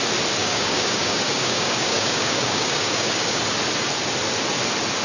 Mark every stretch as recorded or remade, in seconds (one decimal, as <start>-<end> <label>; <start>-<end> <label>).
0.0-0.4 recorded; 0.4-3.4 remade; 3.4-5.0 recorded